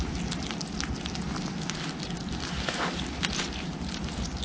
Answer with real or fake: real